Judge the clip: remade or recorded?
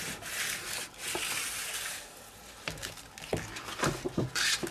recorded